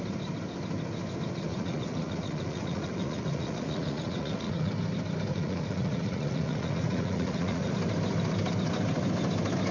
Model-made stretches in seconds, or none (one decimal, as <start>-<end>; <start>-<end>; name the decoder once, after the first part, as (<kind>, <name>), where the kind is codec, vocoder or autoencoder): 1.5-4.7 (vocoder, Vocos); 5.3-7.7